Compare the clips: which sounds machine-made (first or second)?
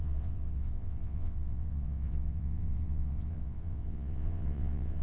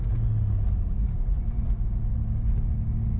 first